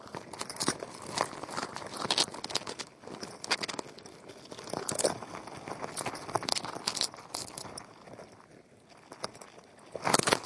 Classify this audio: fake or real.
real